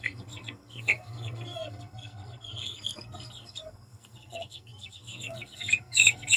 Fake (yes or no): yes